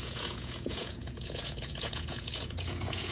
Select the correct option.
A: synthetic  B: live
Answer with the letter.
A